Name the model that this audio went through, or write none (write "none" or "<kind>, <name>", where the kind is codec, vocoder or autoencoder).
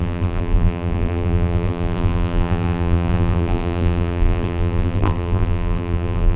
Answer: vocoder, BigVGAN v2